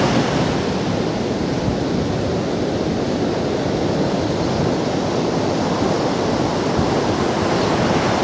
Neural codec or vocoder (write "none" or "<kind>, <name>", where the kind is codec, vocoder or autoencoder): none